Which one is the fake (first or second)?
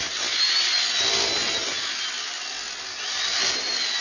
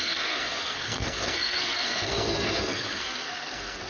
second